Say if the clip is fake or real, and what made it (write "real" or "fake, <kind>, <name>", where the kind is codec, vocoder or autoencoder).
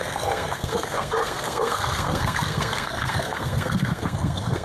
fake, codec, SNAC